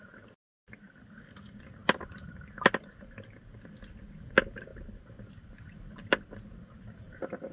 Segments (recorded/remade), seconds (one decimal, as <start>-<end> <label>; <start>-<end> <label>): 0.0-1.8 recorded; 1.8-3.1 remade; 3.1-4.7 recorded; 4.7-7.5 remade